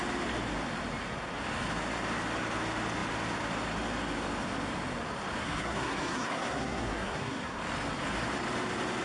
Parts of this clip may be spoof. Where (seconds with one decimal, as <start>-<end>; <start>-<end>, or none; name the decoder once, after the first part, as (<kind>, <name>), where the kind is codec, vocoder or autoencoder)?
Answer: 5.4-7.6 (codec, SNAC)